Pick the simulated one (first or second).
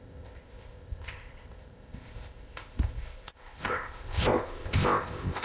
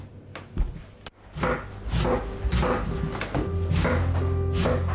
first